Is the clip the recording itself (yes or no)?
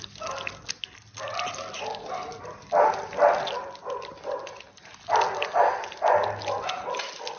yes